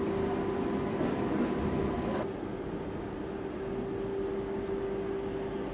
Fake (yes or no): no